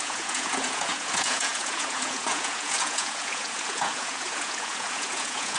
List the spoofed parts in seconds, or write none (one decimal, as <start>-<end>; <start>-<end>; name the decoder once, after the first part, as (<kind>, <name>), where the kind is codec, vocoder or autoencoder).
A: 0.0-5.6 (vocoder, Vocos)